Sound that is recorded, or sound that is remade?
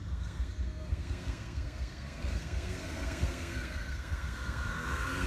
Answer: remade